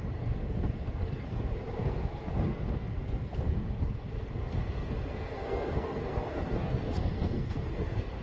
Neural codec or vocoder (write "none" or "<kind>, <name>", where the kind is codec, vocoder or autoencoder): codec, SNAC